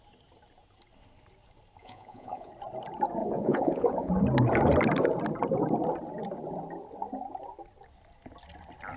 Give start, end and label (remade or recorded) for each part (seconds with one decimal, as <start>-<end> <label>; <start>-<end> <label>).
0.0-1.8 recorded; 1.8-2.5 remade; 2.5-3.2 recorded; 3.2-4.1 remade; 4.1-9.0 recorded